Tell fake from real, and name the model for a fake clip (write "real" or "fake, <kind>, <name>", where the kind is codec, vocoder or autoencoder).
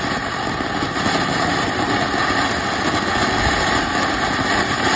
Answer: real